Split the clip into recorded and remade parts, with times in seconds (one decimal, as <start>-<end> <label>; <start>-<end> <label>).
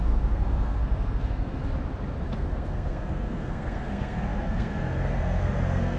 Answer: 0.0-1.6 remade; 1.6-2.3 recorded; 2.3-6.0 remade